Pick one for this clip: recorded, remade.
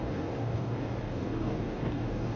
remade